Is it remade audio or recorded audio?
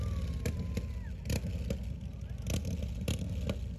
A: recorded